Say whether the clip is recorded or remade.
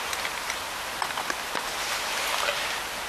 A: recorded